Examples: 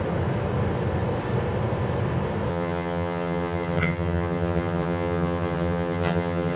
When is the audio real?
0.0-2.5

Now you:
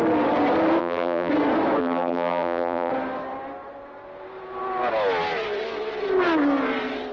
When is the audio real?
0.0-0.8; 1.3-1.8; 2.9-7.1

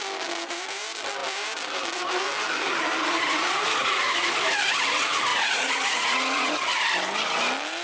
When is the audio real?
0.0-3.8; 4.3-5.3; 6.5-7.8

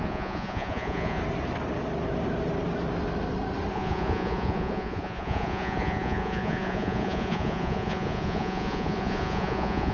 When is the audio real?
1.2-3.7